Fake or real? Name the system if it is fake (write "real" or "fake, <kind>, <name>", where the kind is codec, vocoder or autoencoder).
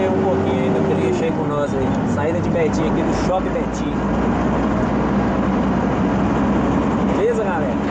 real